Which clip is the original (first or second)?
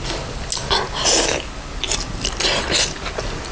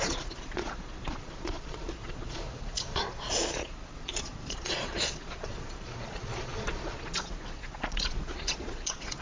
first